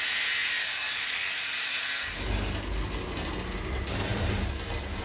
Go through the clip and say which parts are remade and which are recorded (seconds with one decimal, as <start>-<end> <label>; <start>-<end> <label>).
0.0-0.4 recorded; 0.4-1.2 remade; 1.2-3.9 recorded; 3.9-4.5 remade; 4.5-5.0 recorded